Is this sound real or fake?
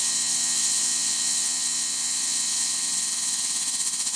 fake